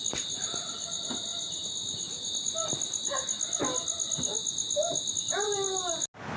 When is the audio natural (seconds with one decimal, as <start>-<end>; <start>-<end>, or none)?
0.0-6.4